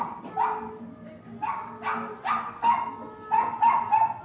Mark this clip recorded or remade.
recorded